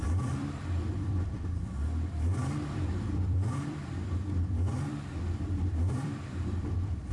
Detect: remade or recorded remade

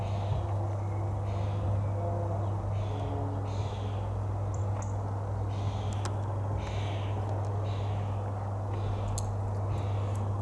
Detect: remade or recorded recorded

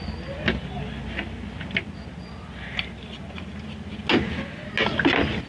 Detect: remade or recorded recorded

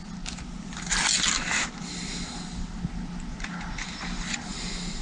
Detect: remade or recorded recorded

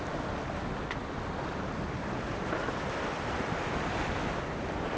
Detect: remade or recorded recorded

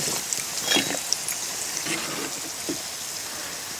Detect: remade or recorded recorded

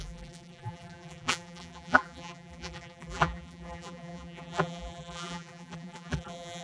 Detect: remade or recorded remade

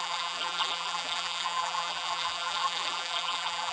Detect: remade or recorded remade